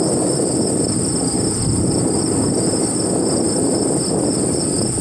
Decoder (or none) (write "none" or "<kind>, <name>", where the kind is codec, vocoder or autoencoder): none